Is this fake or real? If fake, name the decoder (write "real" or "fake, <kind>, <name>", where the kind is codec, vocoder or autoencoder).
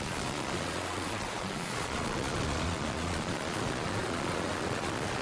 fake, vocoder, Vocos